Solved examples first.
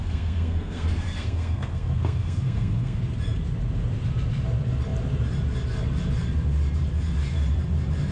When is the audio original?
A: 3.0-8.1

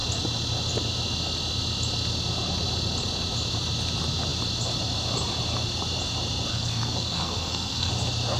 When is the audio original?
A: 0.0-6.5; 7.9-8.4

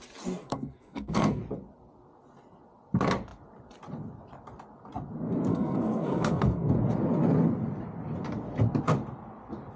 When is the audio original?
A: 0.0-0.4; 1.4-5.5; 6.7-9.8

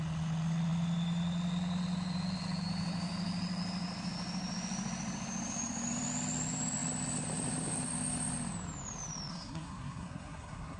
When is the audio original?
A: 0.0-9.3